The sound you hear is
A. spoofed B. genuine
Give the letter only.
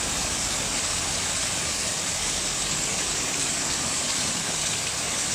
A